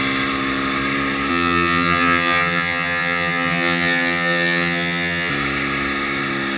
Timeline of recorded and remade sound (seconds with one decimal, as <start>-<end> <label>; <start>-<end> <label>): 0.0-1.3 recorded; 1.3-5.3 remade; 5.3-6.6 recorded